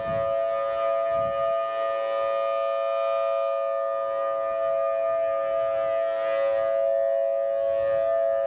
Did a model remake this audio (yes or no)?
no